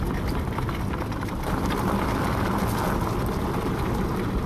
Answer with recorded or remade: recorded